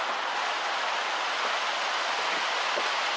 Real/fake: real